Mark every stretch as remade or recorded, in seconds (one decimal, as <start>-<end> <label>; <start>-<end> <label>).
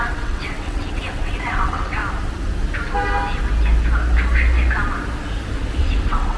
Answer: 0.0-2.0 remade; 2.0-5.8 recorded; 5.8-6.4 remade